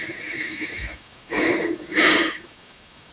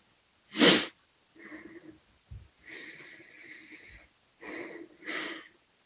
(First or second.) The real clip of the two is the second